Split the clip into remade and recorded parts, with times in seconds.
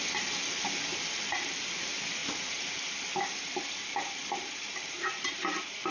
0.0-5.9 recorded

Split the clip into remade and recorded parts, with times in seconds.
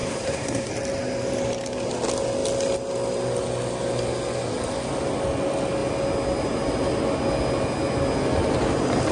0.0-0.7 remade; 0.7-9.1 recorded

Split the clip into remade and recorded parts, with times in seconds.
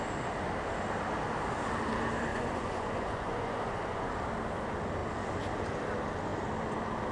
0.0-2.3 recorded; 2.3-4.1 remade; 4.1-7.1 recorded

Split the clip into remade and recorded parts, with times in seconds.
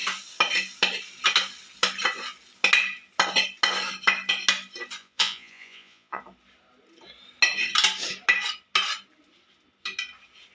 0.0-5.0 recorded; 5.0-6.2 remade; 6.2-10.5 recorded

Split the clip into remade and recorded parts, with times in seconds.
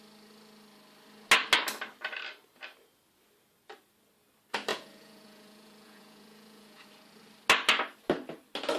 0.0-4.7 recorded; 4.7-6.9 remade; 6.9-8.8 recorded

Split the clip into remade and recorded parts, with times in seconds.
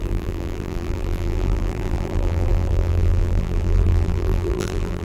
0.0-5.0 remade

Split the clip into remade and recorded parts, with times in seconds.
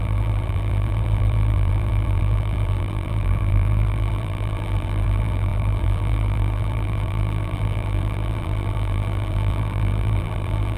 0.0-10.8 remade